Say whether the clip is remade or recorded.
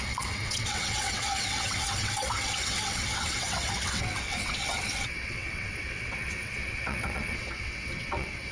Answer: remade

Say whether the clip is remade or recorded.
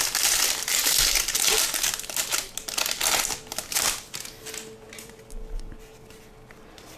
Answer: recorded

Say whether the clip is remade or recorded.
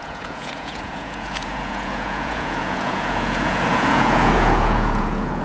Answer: remade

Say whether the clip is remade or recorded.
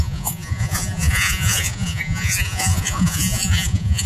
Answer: remade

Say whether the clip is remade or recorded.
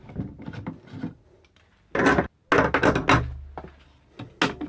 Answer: recorded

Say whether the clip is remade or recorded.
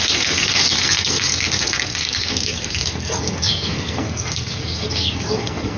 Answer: remade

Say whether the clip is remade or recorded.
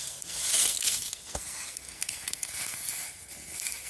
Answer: remade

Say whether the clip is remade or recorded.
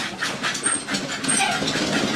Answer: recorded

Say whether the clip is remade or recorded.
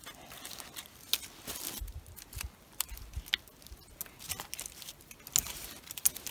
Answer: recorded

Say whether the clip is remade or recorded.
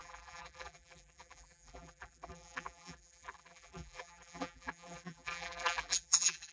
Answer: remade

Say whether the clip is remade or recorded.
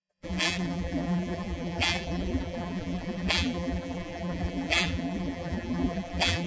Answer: remade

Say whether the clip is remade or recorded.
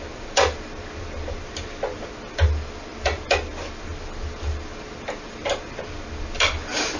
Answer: recorded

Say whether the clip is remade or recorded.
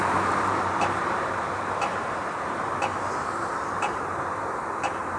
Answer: remade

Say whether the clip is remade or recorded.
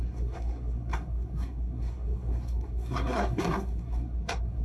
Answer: remade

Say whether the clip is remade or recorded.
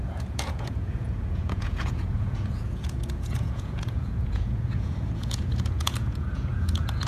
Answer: remade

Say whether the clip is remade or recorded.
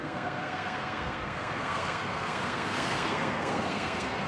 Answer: remade